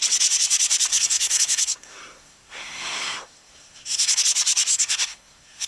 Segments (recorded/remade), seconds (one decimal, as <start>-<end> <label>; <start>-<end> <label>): 0.0-0.9 recorded; 0.9-4.2 remade; 4.2-4.7 recorded; 4.7-5.7 remade